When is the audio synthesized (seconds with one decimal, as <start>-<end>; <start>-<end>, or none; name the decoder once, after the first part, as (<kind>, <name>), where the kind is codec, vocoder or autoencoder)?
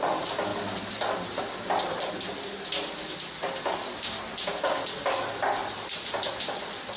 5.6-6.3 (vocoder, BigVGAN v2)